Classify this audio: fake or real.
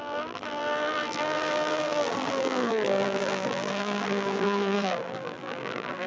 fake